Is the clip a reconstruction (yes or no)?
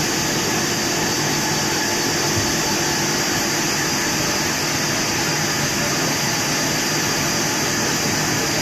no